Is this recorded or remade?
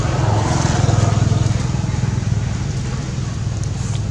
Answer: recorded